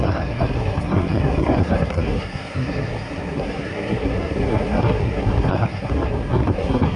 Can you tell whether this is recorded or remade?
remade